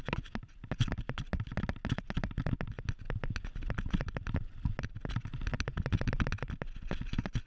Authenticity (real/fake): real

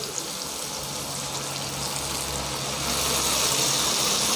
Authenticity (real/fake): real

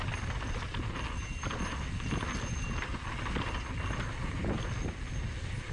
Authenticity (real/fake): real